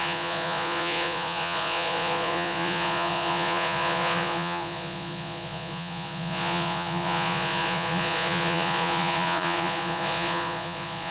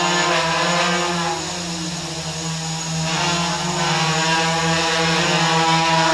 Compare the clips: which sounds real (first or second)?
second